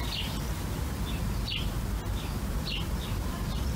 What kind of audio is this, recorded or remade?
remade